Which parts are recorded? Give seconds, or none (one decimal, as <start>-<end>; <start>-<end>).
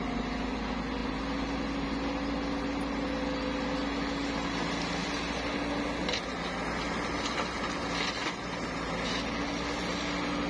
0.0-10.5